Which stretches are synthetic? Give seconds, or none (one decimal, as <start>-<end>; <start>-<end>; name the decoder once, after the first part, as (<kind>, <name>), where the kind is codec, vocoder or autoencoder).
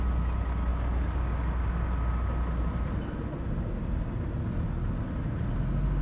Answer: none